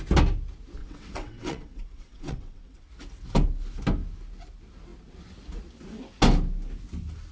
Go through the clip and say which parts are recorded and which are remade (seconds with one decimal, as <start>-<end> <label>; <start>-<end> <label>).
0.0-0.8 recorded; 0.8-2.9 remade; 2.9-7.3 recorded